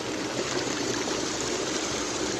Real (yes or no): no